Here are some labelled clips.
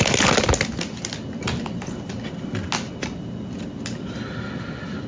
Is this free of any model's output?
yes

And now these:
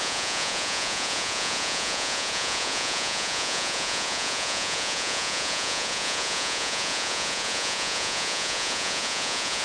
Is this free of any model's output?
no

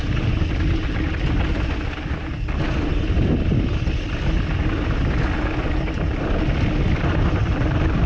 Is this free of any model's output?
yes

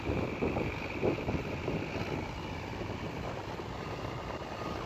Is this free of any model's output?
yes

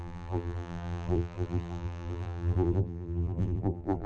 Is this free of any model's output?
no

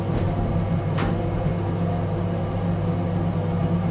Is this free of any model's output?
yes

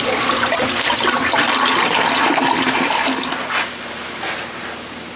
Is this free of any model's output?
yes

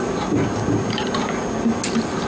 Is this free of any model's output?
yes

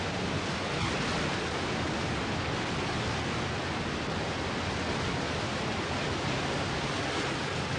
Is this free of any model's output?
yes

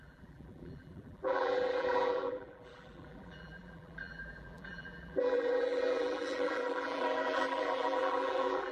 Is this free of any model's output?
no